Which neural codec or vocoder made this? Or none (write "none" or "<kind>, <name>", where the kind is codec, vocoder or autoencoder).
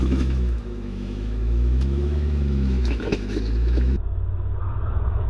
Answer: autoencoder, DAC-VAE